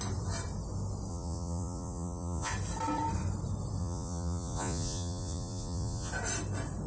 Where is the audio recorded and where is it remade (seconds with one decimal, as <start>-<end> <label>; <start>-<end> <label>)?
0.0-1.1 recorded; 1.1-2.5 remade; 2.5-3.8 recorded; 3.8-6.1 remade; 6.1-6.9 recorded